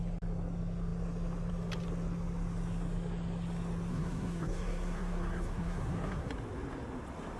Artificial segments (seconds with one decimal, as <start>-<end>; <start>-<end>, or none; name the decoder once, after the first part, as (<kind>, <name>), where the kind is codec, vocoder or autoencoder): 3.9-6.3 (codec, SNAC)